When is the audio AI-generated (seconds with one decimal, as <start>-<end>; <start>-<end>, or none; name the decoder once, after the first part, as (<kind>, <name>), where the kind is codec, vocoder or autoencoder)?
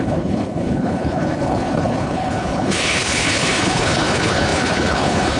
0.0-5.4 (codec, HILCodec)